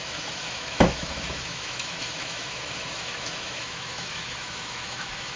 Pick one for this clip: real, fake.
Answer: fake